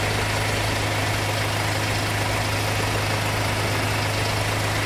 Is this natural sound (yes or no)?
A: yes